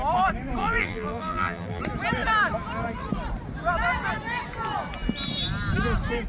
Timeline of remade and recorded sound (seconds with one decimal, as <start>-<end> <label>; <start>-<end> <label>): 0.0-0.6 recorded; 0.6-1.8 remade; 1.8-6.3 recorded